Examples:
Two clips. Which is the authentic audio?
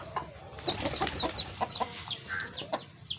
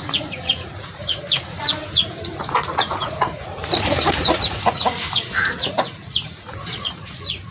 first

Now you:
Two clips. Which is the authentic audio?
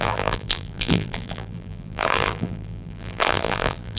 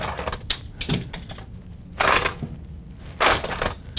second